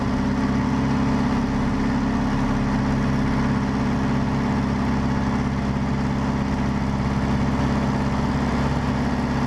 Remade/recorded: recorded